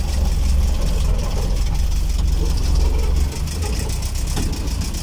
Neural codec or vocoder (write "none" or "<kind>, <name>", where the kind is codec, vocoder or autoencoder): none